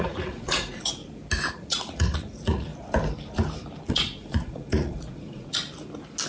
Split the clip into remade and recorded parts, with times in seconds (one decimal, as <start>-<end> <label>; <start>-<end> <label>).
0.0-1.0 remade; 1.0-1.5 recorded; 1.5-2.7 remade; 2.7-3.9 recorded; 3.9-5.6 remade; 5.6-6.3 recorded